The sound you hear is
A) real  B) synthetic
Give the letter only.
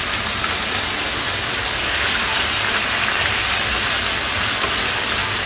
A